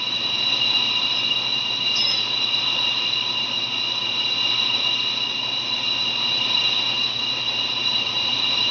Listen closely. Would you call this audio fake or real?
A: real